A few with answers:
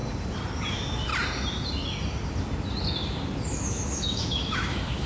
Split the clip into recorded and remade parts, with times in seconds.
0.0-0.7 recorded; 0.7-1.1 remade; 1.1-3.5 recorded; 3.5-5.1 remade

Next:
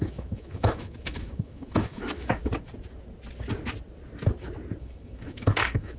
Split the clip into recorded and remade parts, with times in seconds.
0.0-2.4 remade; 2.4-4.8 recorded; 4.8-6.0 remade